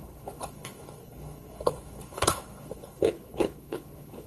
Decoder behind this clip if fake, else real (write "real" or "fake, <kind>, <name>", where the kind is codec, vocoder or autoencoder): fake, codec, HILCodec